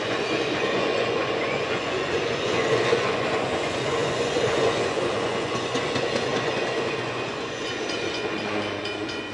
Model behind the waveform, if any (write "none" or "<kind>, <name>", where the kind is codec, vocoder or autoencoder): vocoder, Vocos